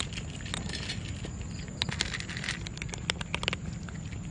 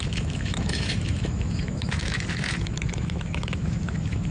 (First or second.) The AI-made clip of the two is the second